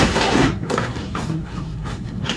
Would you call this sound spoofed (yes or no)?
yes